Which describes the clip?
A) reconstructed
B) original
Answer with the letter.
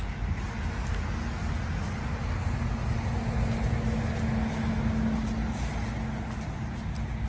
B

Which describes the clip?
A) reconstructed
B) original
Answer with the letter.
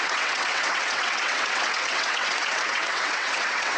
A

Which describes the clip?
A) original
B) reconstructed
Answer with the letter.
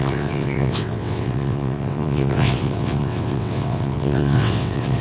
B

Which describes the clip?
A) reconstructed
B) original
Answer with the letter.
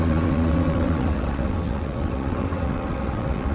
A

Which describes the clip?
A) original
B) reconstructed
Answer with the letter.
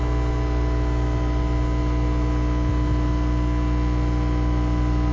A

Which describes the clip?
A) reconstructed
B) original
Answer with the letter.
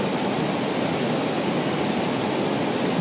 B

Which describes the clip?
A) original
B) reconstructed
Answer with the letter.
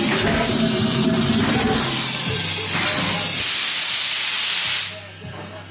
A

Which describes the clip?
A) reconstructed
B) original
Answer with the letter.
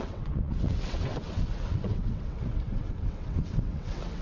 A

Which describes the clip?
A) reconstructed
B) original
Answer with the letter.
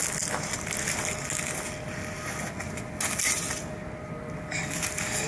B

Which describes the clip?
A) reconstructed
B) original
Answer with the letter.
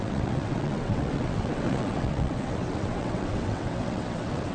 A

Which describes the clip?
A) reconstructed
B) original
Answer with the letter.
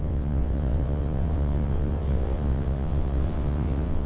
A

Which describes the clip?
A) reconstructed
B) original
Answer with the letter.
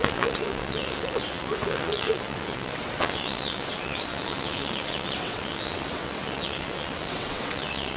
A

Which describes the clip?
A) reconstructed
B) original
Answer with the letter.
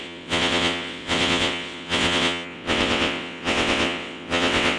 A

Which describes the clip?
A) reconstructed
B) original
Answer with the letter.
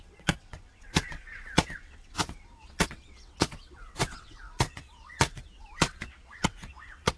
A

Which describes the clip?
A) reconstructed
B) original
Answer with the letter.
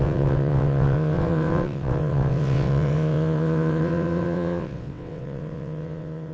A